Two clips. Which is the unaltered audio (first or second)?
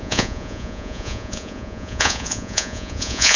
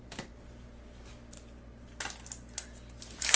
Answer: second